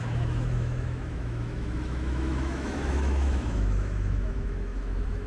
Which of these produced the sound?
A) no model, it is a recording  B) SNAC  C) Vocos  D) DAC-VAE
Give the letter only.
D